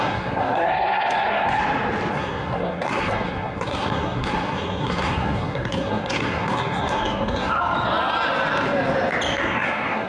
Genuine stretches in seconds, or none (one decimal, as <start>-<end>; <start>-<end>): 1.6-2.1; 7.6-9.4